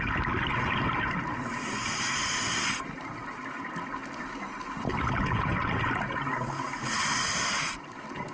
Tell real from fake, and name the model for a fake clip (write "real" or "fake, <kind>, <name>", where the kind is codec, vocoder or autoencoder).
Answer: real